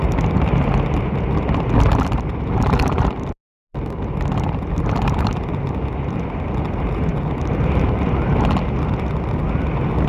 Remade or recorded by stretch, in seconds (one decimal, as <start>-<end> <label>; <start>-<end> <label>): 0.0-10.1 recorded